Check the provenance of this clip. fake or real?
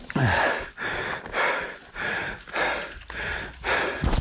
real